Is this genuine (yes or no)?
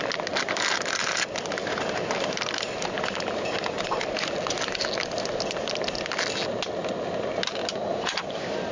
yes